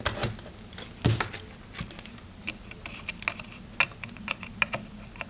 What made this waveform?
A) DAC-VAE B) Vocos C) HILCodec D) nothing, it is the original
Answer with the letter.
D